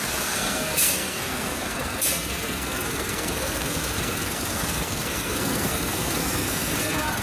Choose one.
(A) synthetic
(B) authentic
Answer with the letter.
A